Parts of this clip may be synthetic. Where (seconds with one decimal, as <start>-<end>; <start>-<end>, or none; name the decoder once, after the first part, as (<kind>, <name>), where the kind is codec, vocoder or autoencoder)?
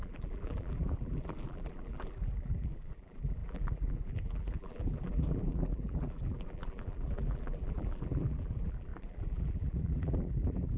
0.0-10.8 (vocoder, BigVGAN v2)